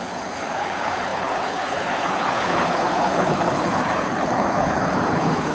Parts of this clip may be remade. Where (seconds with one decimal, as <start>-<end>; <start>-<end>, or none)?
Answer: 0.0-5.5